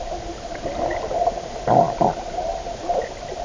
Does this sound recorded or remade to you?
remade